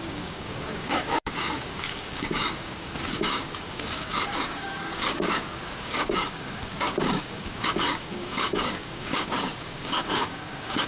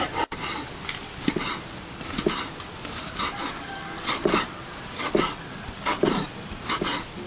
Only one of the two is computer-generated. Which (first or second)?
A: first